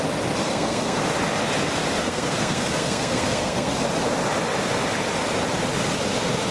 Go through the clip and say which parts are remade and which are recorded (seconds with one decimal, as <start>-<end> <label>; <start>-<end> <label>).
0.0-0.4 recorded; 0.4-1.0 remade; 1.0-2.0 recorded; 2.0-3.8 remade; 3.8-6.5 recorded